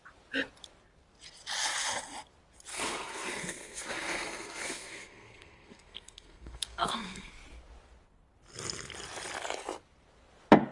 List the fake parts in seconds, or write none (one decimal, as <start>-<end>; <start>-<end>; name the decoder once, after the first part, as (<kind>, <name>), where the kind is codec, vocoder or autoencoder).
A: 2.7-7.3 (codec, SNAC)